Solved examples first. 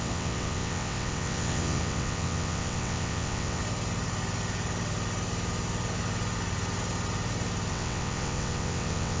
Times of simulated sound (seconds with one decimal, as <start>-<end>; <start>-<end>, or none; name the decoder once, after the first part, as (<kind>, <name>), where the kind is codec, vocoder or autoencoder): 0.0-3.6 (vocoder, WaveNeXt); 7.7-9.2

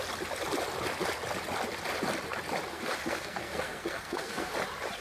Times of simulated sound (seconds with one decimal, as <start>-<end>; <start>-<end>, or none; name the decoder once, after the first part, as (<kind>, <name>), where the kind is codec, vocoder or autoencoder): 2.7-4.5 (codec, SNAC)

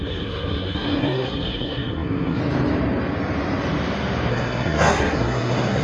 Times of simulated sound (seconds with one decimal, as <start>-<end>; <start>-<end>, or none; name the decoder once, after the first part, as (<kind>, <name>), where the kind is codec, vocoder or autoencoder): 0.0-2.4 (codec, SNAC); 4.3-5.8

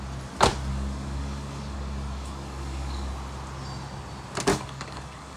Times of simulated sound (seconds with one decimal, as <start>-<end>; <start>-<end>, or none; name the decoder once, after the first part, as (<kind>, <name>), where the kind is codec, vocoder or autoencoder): 0.7-3.1 (codec, DAC); 4.5-5.4

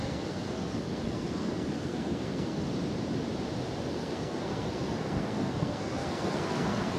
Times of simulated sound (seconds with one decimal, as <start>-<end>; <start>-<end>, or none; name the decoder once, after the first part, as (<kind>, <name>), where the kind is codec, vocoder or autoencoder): 0.0-2.6 (codec, SNAC); 3.9-7.0

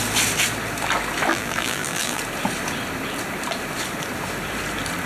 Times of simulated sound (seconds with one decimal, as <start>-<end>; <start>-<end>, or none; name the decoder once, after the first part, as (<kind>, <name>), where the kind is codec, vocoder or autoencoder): 1.3-2.2 (vocoder, BigVGAN v2)

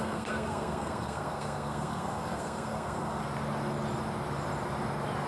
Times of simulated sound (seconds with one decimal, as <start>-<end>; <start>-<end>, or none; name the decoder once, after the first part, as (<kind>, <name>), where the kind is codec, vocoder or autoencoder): 0.0-3.2 (codec, SNAC)